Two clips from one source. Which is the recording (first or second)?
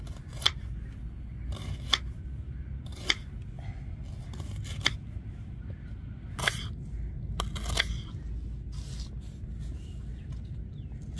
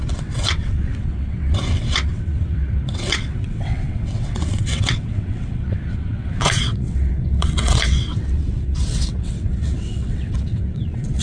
first